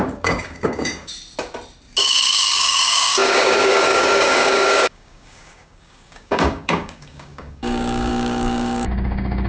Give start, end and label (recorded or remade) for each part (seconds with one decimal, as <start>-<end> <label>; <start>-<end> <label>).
0.0-1.1 remade; 1.1-2.0 recorded; 2.0-9.5 remade